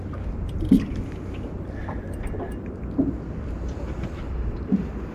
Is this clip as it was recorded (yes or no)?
yes